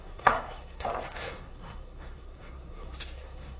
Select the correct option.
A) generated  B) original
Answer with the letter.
A